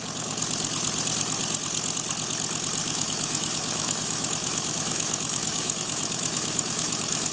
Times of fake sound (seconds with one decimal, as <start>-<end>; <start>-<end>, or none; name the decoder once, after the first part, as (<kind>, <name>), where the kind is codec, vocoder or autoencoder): 2.8-7.3 (autoencoder, DAC-VAE)

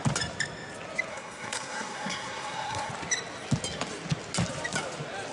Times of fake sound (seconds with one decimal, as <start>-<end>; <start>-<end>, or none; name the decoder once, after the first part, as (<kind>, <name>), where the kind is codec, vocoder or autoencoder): 1.1-2.9 (codec, SNAC)

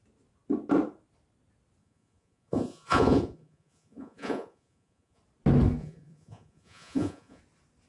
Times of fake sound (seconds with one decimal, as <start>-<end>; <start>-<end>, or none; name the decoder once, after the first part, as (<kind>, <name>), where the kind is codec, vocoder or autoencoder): 1.8-5.2 (vocoder, Vocos); 5.8-7.4

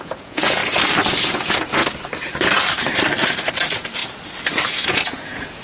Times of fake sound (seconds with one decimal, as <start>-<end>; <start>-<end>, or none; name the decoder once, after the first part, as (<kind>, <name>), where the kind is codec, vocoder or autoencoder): 0.0-0.6 (vocoder, Vocos); 1.3-1.8; 3.5-4.0; 4.7-5.6